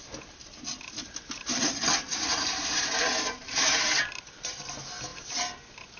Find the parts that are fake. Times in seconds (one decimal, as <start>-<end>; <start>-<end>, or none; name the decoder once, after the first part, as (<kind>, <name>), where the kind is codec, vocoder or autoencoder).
2.1-4.5 (vocoder, BigVGAN v2)